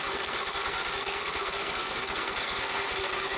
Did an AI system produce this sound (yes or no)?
yes